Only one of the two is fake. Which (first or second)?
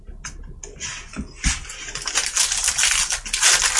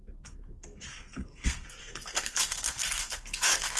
second